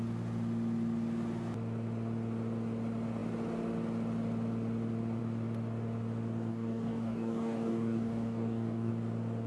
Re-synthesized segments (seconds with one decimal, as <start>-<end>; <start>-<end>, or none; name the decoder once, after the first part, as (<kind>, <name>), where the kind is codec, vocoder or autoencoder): 6.5-8.9 (codec, DAC)